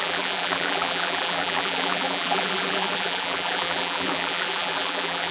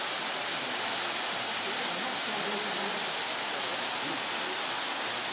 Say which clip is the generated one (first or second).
first